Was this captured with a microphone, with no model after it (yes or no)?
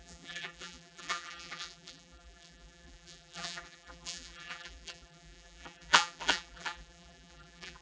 no